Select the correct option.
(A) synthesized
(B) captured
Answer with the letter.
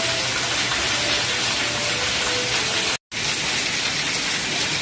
B